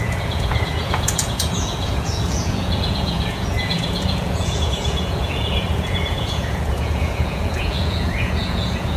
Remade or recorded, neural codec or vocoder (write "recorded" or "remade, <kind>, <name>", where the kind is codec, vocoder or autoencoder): remade, vocoder, Vocos